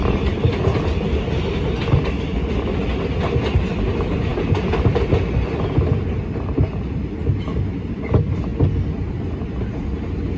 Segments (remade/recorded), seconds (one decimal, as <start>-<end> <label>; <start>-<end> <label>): 0.0-10.4 recorded